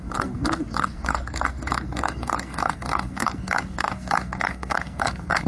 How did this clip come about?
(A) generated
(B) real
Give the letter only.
A